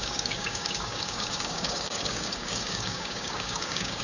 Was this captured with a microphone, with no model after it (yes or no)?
no